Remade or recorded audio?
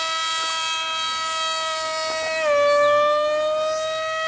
recorded